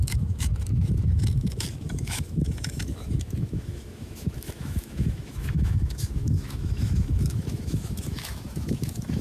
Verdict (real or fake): fake